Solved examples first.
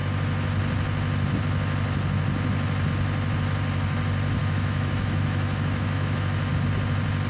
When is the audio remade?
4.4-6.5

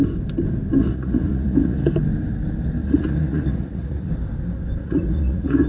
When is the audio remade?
0.8-1.9; 2.8-4.1; 4.8-5.7

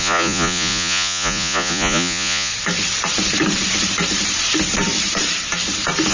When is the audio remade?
0.0-2.5

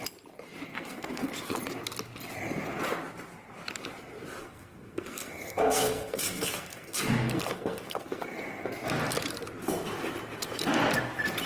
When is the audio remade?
0.7-1.6; 4.4-8.7

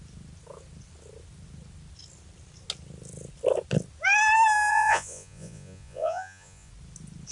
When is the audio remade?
4.7-6.7